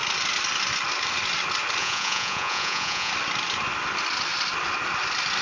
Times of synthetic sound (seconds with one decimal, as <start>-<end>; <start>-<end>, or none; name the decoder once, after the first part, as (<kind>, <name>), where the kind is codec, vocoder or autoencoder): 1.8-3.1 (vocoder, Vocos)